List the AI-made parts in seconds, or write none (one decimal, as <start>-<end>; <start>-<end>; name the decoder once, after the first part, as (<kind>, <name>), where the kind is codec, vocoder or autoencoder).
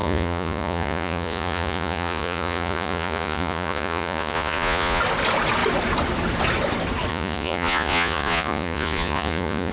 0.0-5.0 (vocoder, Vocos); 7.1-9.7